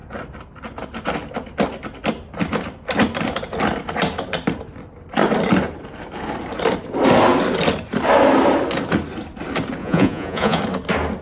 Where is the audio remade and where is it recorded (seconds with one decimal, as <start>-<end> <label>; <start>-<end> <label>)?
0.0-9.8 recorded; 9.8-10.6 remade; 10.6-11.2 recorded